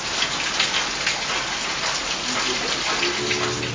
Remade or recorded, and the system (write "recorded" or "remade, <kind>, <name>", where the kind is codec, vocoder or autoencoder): recorded